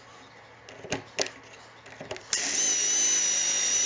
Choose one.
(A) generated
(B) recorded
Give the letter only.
B